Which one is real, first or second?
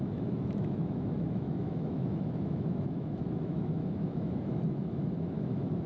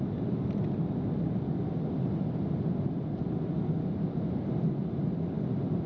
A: second